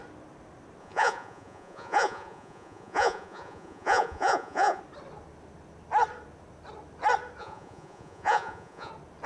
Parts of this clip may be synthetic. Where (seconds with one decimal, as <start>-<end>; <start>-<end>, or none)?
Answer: 0.8-4.8; 7.4-8.9